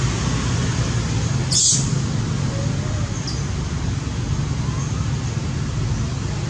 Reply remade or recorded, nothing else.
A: recorded